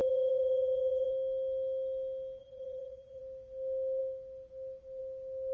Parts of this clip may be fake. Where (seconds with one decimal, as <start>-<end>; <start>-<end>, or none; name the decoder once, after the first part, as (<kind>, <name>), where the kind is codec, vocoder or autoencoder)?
0.0-1.1 (vocoder, WaveNeXt); 2.4-3.2